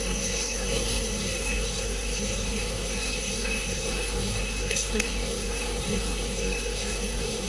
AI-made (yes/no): yes